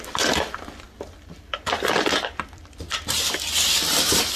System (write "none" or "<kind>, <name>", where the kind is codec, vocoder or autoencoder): vocoder, BigVGAN v2